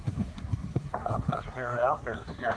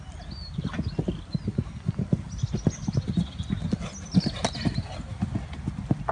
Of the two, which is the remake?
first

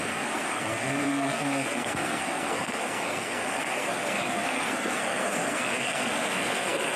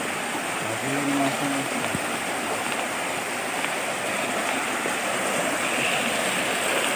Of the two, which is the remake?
first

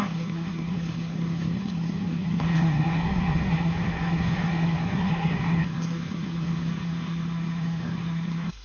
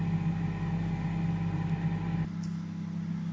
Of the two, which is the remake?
first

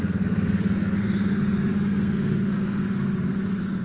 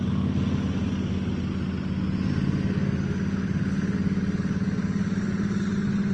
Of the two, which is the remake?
first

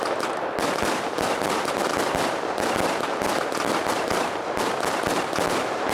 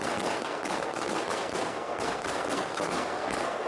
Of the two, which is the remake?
second